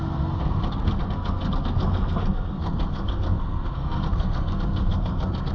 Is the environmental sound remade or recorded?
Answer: remade